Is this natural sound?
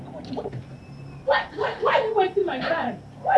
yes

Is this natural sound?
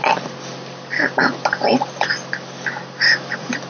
yes